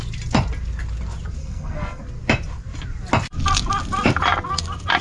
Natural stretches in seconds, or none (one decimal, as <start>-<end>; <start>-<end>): 0.0-1.4; 2.0-5.0